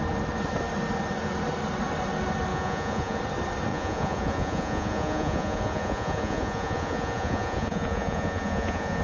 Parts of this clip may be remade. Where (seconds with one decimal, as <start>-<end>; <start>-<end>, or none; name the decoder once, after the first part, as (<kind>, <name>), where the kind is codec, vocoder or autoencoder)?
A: 2.5-3.2 (vocoder, Vocos); 3.7-9.0